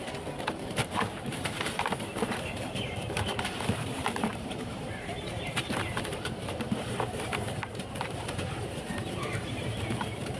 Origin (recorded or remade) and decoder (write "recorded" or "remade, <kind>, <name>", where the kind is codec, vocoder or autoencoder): remade, vocoder, BigVGAN v2